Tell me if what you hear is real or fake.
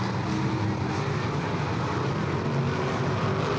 real